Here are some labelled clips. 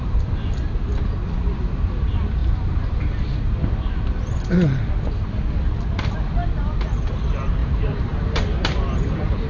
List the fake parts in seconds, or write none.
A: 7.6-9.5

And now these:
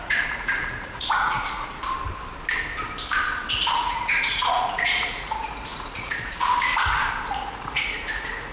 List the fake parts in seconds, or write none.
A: 0.0-1.8; 3.5-6.7; 7.3-8.5

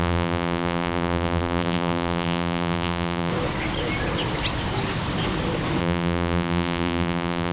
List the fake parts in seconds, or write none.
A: 0.0-3.3; 5.8-7.5